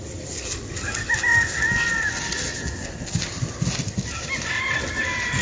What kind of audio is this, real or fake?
real